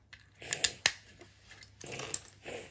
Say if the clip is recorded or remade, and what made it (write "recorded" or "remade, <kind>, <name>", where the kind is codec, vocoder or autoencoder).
recorded